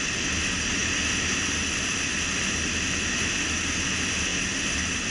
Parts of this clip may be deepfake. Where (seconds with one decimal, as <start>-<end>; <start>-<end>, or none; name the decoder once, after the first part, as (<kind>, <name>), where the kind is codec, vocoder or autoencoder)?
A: none